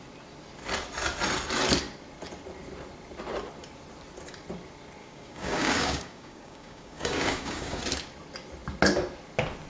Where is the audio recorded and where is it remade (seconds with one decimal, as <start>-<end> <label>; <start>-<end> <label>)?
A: 0.0-5.0 recorded; 5.0-7.8 remade; 7.8-9.7 recorded